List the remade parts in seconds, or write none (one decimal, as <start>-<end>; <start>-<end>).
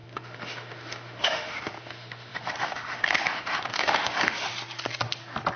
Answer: 0.0-4.5